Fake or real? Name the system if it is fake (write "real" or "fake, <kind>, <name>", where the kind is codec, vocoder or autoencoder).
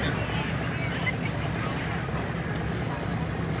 real